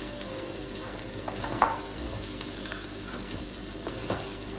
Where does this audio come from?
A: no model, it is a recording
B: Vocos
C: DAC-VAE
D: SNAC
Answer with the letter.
D